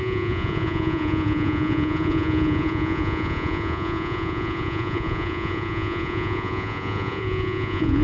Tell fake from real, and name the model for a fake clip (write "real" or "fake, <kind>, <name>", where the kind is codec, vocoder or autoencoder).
fake, vocoder, Vocos